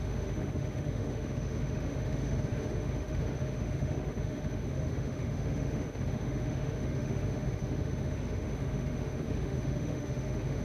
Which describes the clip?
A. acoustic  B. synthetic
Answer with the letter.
B